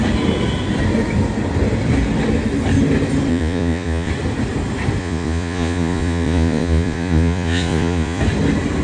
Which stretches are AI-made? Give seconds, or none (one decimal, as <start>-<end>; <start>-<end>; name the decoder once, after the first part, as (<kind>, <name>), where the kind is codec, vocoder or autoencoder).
3.3-4.1 (vocoder, Vocos); 5.0-8.2